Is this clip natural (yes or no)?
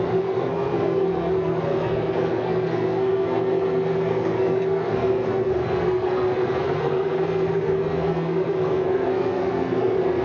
no